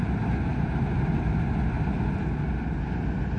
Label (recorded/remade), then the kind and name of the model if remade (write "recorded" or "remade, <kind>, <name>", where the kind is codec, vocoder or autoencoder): recorded